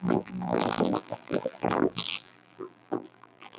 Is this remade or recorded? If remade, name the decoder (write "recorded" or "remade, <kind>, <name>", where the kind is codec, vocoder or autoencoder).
remade, vocoder, BigVGAN v2